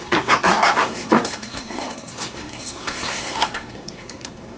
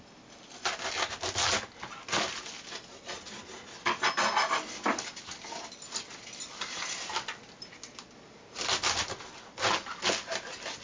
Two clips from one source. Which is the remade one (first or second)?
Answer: first